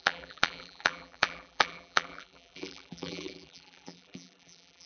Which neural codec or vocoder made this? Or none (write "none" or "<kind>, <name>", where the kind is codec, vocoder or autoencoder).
vocoder, BigVGAN v2